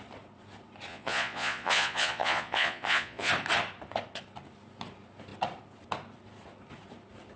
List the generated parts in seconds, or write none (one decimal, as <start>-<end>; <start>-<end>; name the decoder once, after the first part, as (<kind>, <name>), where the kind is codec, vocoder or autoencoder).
0.9-3.3 (vocoder, Vocos)